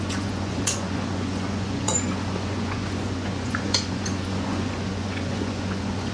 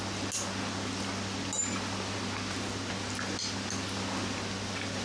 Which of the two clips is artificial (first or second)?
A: first